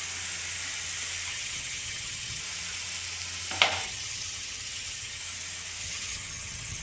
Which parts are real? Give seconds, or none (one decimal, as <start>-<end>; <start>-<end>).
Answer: 0.0-1.3; 2.4-3.8; 5.2-5.8